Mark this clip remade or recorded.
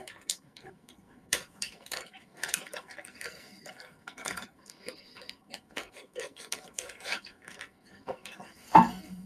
remade